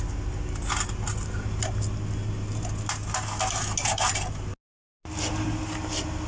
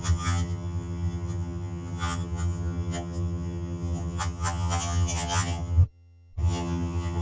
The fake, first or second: second